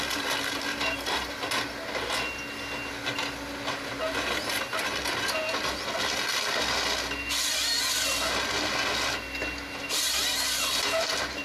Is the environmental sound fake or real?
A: real